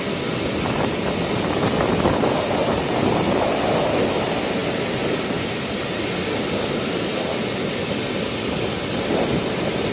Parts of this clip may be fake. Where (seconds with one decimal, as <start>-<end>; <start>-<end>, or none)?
none